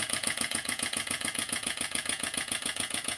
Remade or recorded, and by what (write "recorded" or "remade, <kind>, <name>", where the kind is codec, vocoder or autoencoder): remade, vocoder, Vocos